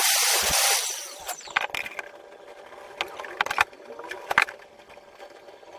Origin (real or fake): real